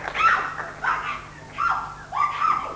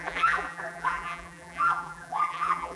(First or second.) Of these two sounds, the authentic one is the first